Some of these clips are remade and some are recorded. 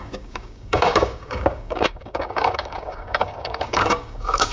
remade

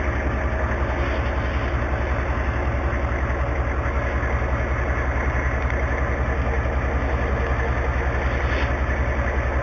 recorded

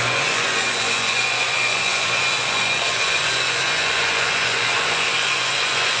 remade